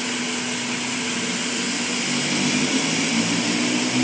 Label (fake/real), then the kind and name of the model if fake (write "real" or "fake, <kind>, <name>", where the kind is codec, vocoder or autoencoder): real